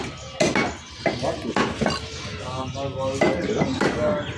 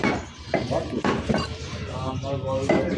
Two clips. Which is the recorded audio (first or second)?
first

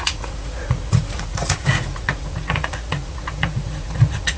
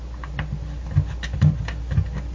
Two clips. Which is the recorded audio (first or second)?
second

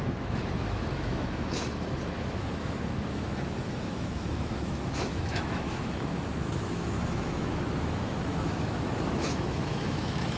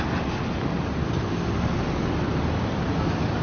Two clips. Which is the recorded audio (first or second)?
second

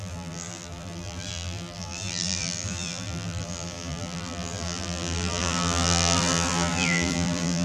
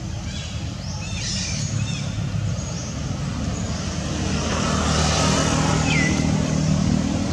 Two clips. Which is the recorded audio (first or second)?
second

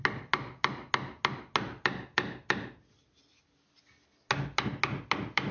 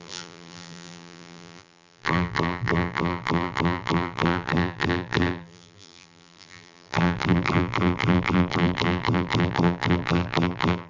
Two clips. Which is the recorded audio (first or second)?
first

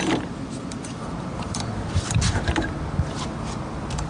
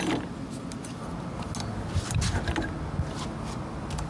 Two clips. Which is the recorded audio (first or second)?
second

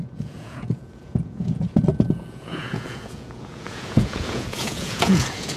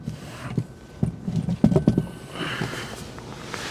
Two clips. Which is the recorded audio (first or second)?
second